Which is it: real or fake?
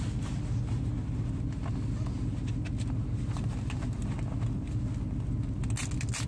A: real